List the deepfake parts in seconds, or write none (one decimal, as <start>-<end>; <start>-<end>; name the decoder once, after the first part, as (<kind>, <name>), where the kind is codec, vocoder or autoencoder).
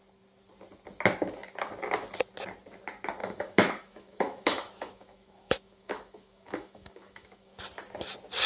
3.2-7.6 (autoencoder, DAC-VAE)